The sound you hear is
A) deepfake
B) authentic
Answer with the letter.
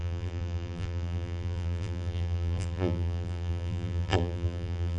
A